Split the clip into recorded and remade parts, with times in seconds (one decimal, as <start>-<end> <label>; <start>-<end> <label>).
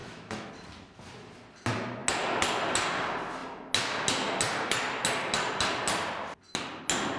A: 0.0-0.5 remade; 0.5-7.2 recorded